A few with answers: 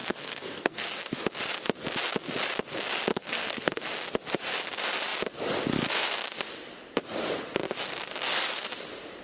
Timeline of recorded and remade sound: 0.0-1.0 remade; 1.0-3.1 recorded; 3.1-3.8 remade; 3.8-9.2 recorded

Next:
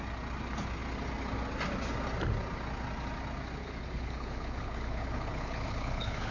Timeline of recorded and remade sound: 0.0-3.6 recorded; 3.6-6.3 remade